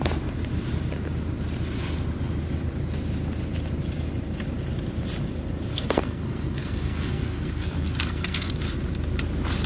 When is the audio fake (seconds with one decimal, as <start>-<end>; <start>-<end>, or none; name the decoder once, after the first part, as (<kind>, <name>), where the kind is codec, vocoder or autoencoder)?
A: 5.7-8.5 (codec, SNAC)